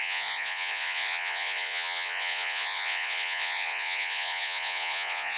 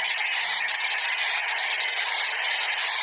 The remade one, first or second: first